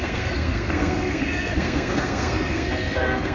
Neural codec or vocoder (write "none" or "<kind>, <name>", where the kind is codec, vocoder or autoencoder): codec, SNAC